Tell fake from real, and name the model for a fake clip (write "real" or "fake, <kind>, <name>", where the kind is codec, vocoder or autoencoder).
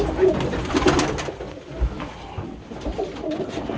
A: real